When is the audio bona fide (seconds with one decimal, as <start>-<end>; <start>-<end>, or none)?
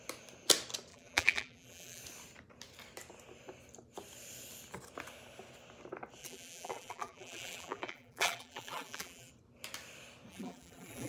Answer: 0.0-0.9; 2.0-6.2; 9.3-10.3